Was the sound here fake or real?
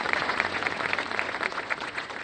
fake